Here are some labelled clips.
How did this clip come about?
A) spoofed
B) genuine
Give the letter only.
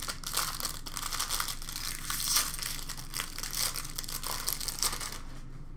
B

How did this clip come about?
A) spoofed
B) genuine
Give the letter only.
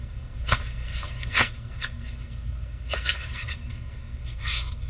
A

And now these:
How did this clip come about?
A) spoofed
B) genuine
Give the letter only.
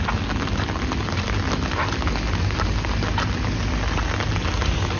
B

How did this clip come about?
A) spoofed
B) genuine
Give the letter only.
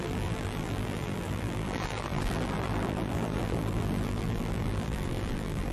A